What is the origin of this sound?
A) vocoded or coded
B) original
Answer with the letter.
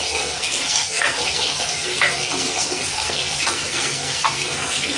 A